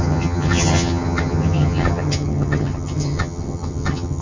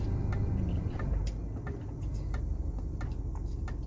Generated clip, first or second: first